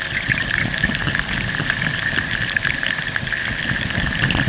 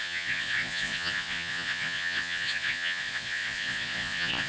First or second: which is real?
first